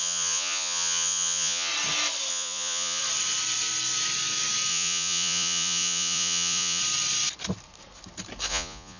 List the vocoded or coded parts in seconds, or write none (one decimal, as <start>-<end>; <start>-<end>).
0.0-1.7; 2.3-3.0; 4.7-6.8; 8.5-9.0